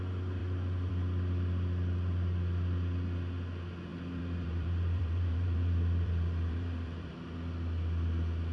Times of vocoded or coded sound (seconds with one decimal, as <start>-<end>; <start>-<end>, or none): 3.9-7.1